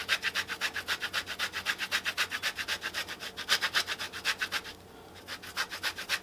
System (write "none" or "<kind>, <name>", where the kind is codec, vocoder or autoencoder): none